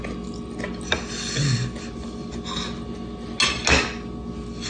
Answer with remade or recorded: recorded